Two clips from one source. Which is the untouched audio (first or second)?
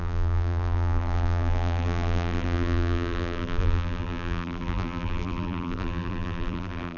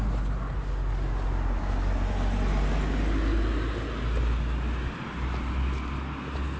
second